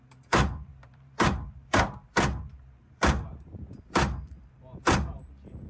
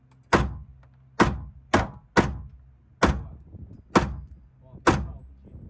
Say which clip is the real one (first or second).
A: second